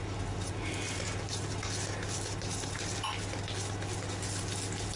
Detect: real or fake real